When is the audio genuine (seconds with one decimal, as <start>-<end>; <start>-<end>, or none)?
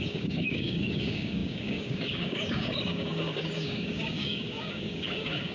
none